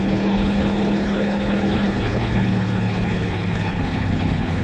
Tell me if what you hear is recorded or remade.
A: remade